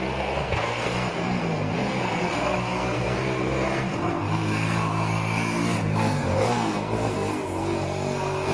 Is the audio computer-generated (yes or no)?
yes